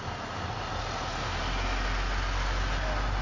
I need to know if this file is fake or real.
real